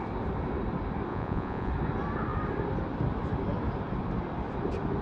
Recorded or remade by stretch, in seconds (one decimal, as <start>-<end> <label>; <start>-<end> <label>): 0.0-1.1 recorded; 1.1-1.7 remade; 1.7-5.0 recorded